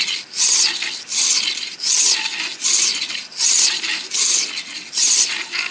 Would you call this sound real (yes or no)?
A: yes